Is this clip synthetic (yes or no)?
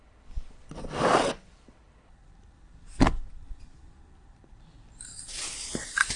yes